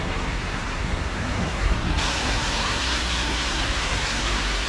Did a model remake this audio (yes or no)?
yes